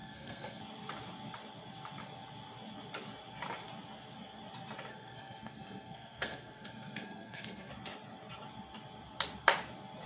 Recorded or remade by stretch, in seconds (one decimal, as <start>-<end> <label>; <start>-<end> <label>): 0.0-0.6 remade; 0.6-4.9 recorded; 4.9-7.7 remade; 7.7-10.1 recorded